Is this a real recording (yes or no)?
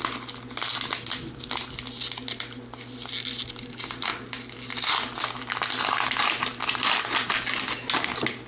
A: yes